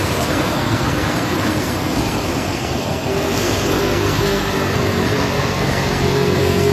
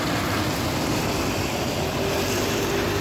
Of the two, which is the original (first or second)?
second